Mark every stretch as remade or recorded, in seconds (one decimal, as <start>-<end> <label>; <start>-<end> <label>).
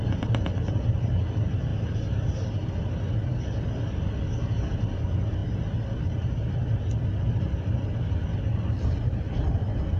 0.0-10.0 recorded